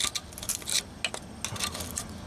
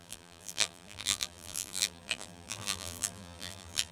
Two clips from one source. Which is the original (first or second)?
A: first